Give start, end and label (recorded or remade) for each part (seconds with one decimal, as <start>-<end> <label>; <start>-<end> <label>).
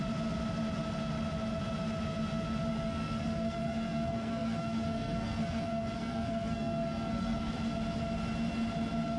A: 0.0-2.7 recorded; 2.7-7.5 remade; 7.5-9.2 recorded